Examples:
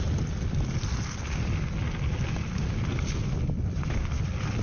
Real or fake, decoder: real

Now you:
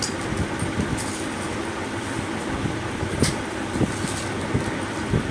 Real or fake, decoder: real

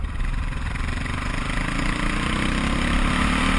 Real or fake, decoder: fake, vocoder, BigVGAN v2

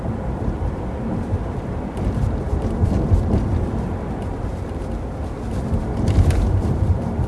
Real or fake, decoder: fake, vocoder, BigVGAN v2